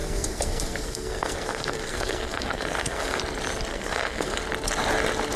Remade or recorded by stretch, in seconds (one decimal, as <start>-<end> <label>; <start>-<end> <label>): 0.0-3.2 remade; 3.2-3.7 recorded; 3.7-4.4 remade; 4.4-5.4 recorded